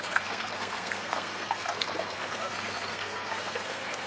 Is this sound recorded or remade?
remade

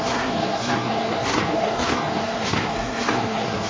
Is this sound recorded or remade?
remade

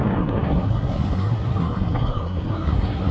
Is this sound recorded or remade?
remade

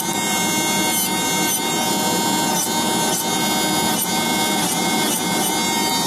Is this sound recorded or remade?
recorded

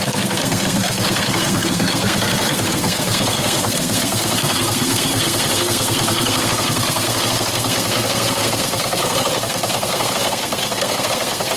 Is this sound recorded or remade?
remade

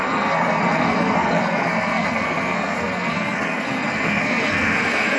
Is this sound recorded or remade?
remade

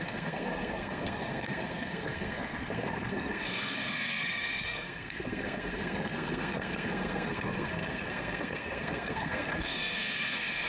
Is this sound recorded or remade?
remade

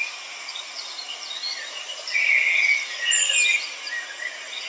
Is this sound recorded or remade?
recorded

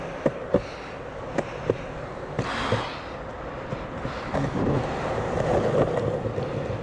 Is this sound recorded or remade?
recorded